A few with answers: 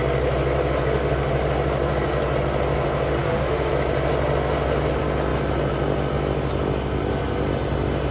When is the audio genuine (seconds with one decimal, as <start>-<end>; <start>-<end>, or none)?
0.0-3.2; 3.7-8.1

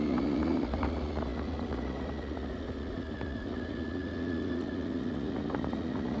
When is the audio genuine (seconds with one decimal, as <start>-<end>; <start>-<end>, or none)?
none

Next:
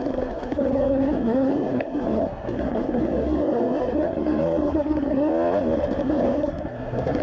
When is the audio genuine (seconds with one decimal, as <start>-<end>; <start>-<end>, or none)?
5.3-6.0